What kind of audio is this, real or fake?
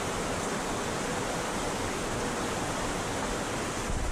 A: fake